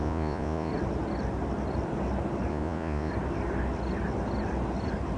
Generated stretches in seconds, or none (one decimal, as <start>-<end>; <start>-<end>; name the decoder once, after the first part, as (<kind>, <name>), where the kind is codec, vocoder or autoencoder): 0.0-0.7 (vocoder, Vocos); 2.5-3.1